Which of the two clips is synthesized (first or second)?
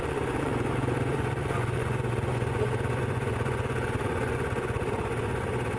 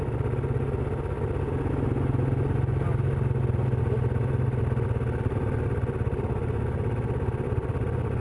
first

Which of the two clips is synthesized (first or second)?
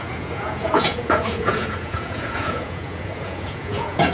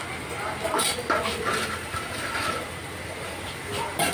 first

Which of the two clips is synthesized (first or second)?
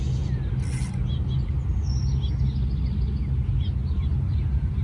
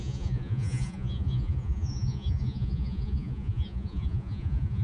second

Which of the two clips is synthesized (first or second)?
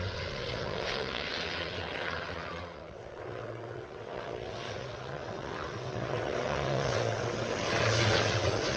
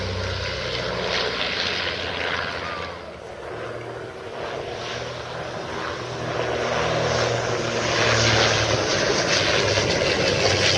first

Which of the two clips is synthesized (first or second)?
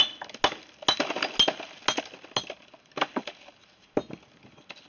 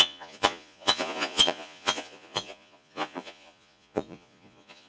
second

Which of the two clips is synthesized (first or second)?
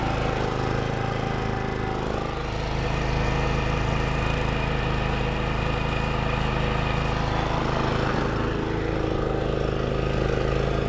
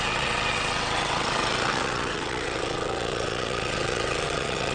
second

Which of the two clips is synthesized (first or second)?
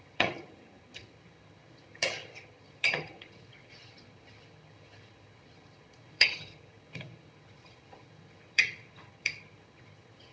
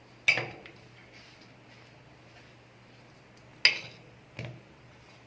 first